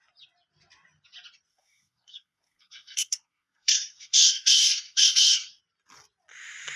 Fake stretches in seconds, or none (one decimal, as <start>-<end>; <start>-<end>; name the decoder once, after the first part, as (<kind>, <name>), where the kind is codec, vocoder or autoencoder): 1.5-5.6 (codec, SNAC)